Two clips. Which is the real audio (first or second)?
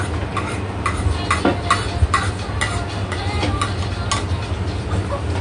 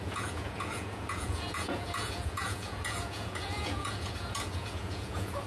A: first